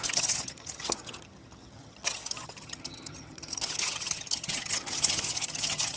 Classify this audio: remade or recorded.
remade